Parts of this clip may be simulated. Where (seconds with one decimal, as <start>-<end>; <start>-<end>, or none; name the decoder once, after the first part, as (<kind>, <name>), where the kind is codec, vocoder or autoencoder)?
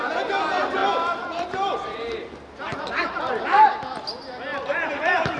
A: 0.8-3.2 (vocoder, BigVGAN v2); 4.5-5.4